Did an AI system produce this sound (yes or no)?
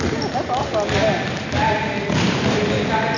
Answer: no